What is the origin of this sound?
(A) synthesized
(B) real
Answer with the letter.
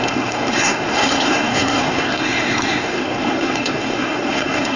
A